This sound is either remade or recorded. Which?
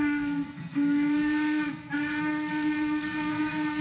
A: remade